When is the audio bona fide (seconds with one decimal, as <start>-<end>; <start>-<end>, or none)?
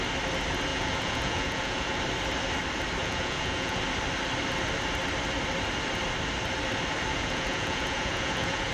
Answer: 0.0-0.7; 2.0-3.0; 3.8-7.1